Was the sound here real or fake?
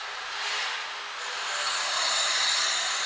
real